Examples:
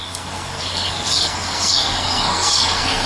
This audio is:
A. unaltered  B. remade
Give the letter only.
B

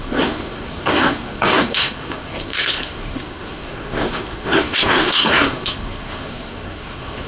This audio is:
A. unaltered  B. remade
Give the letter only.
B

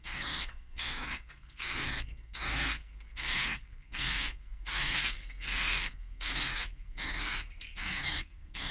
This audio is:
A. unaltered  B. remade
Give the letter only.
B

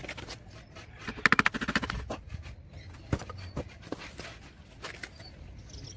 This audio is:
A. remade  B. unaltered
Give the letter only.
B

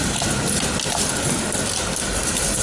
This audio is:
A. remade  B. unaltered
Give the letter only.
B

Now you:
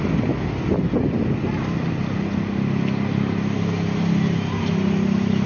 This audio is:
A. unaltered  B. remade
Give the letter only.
A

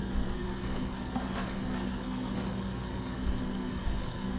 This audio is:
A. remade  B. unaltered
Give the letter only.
A